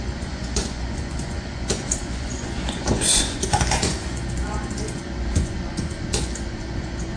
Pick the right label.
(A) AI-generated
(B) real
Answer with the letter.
A